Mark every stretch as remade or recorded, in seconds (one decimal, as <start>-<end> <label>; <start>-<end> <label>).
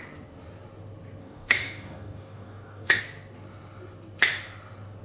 0.0-1.2 recorded; 1.2-3.0 remade; 3.0-5.0 recorded